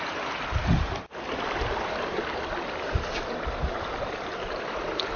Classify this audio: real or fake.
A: real